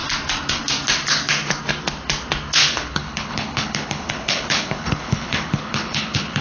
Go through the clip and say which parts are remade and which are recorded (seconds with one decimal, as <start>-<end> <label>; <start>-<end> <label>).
0.0-2.6 recorded; 2.6-6.4 remade